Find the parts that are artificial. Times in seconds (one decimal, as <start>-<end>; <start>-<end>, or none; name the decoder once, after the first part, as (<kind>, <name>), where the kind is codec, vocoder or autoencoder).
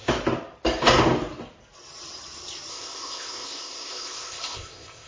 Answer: 2.7-5.1 (codec, ZipCodec)